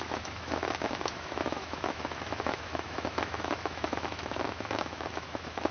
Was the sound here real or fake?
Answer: fake